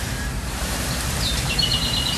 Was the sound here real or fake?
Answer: fake